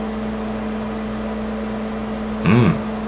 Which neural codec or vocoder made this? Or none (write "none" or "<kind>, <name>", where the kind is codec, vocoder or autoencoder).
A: none